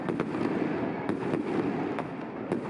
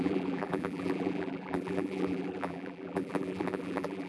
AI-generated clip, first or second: second